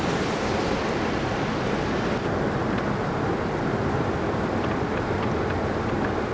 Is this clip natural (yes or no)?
yes